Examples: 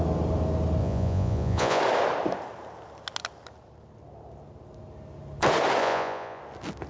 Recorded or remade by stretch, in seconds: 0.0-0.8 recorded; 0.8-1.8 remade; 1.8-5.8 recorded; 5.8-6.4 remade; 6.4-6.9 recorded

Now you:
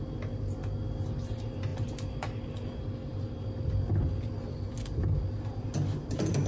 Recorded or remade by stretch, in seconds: 0.0-6.5 recorded

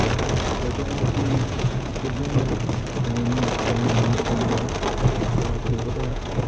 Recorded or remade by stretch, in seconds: 0.0-1.2 recorded; 1.2-1.9 remade; 1.9-5.8 recorded; 5.8-6.5 remade